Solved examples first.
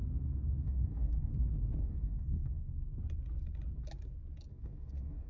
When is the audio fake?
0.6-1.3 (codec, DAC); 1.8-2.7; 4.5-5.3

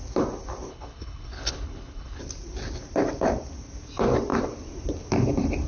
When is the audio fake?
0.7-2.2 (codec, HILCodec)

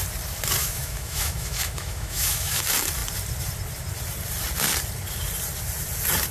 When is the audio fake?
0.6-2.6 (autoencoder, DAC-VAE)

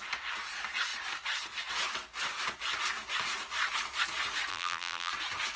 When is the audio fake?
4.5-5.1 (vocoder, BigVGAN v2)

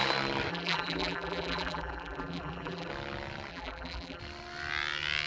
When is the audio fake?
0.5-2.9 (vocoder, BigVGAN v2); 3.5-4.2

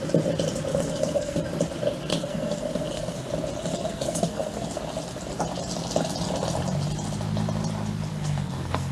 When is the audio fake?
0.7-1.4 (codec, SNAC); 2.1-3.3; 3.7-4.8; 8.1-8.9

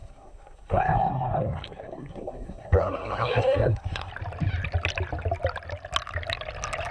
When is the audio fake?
0.0-4.1 (codec, SNAC)